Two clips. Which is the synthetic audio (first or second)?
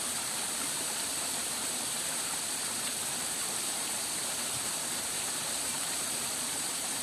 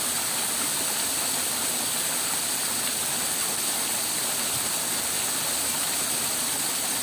first